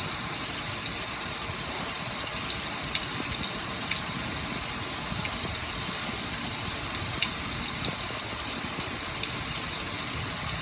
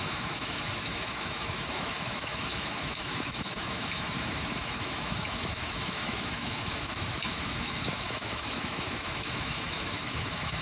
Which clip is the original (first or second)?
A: first